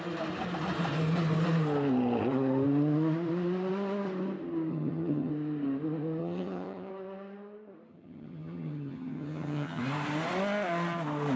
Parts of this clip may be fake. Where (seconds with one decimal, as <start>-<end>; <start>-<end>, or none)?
4.7-5.3; 6.2-6.9; 7.9-9.8